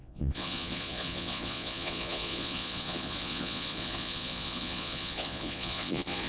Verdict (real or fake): fake